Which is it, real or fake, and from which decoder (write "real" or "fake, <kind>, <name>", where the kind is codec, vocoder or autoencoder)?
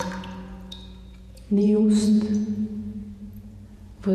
fake, vocoder, Vocos